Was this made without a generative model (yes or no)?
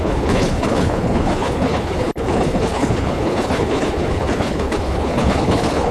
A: no